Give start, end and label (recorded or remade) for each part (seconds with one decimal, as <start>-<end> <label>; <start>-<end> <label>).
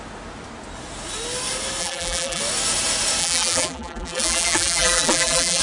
0.0-1.8 recorded; 1.8-2.4 remade; 2.4-3.2 recorded; 3.2-5.6 remade